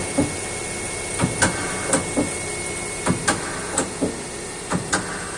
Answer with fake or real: real